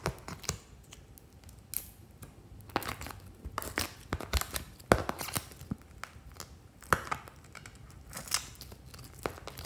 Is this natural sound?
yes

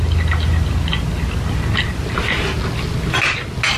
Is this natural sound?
yes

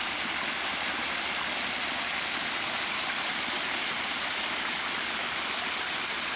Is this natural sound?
yes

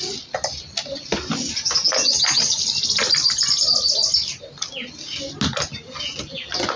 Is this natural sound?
yes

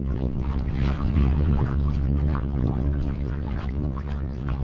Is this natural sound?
no